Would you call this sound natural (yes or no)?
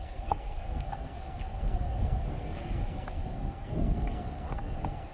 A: no